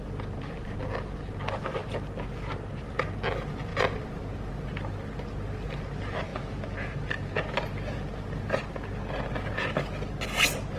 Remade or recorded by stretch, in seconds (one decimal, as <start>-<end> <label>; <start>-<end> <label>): 0.0-10.8 recorded